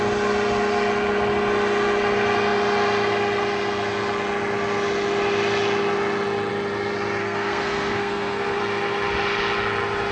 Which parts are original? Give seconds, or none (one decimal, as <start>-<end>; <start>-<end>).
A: 0.0-7.2; 8.6-10.1